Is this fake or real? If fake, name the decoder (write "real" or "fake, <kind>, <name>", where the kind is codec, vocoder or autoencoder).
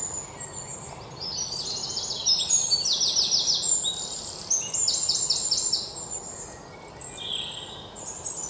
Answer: real